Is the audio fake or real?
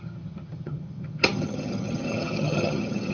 fake